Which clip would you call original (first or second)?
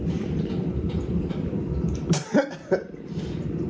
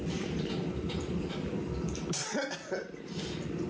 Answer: second